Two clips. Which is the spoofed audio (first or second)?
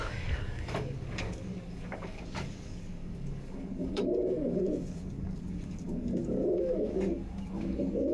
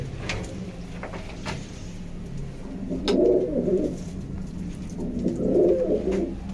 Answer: first